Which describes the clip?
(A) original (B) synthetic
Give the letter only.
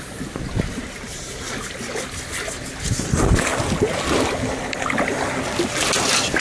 A